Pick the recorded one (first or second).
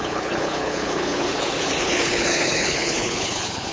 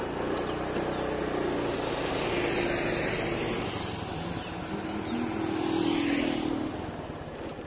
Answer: second